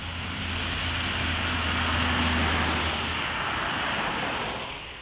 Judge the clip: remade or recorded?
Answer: recorded